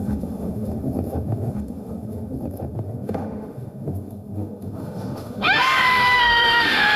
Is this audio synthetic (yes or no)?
yes